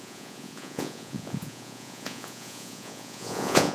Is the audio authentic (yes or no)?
no